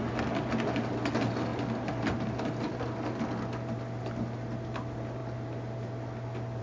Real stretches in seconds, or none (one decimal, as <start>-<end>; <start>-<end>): 0.0-6.6

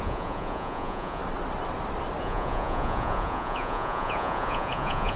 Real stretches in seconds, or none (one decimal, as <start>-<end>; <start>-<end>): 1.2-2.2

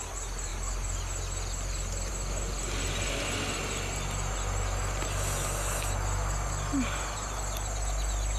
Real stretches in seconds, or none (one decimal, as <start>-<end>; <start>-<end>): 0.0-8.4

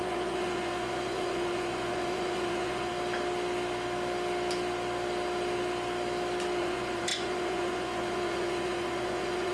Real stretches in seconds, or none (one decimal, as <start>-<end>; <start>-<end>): 2.9-6.6